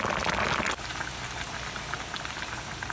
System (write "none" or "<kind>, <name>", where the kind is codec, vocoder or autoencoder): none